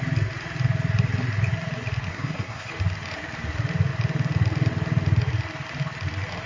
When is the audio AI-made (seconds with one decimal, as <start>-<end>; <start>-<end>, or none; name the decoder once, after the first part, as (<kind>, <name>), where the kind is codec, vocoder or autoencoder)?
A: 2.1-2.7 (codec, SNAC)